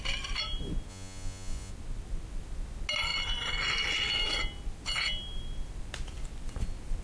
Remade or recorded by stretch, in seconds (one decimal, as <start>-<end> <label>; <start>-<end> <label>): 0.0-0.9 recorded; 0.9-1.7 remade; 1.7-7.0 recorded